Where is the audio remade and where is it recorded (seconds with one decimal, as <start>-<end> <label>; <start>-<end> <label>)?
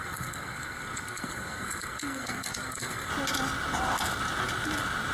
0.0-3.1 remade; 3.1-5.1 recorded